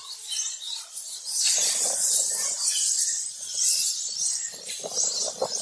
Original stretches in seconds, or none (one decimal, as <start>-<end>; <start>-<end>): 0.0-2.2; 2.9-5.6